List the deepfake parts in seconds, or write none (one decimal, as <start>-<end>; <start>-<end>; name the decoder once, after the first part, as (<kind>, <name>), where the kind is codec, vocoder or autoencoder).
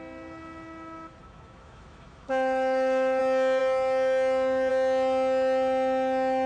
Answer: 1.2-3.2 (autoencoder, DAC-VAE)